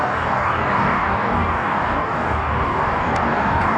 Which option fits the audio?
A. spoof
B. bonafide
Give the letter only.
A